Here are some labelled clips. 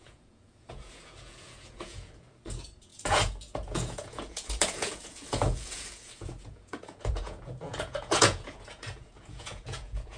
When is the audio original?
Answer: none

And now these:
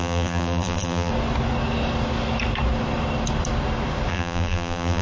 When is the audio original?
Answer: 1.1-4.1